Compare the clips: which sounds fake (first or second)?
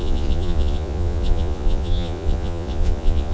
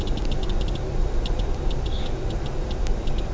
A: first